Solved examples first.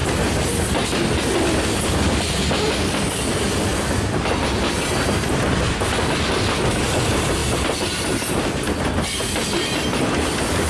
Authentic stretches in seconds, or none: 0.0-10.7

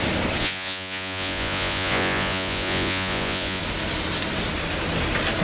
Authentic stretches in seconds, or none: 0.0-0.4; 3.6-5.4

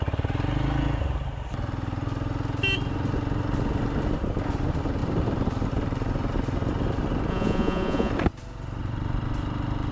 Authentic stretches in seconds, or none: 0.0-7.3; 8.1-9.9

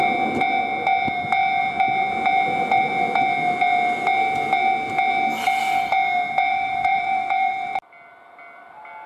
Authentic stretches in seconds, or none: 0.0-6.5; 7.5-9.1